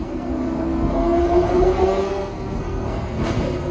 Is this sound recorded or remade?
remade